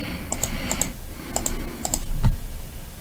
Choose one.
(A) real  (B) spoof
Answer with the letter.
A